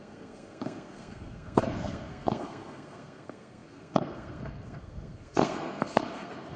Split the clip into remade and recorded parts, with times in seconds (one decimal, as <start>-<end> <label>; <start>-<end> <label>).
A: 0.0-6.6 remade